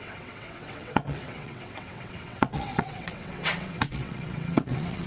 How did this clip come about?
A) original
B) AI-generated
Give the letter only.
B